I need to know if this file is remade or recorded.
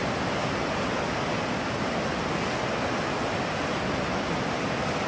recorded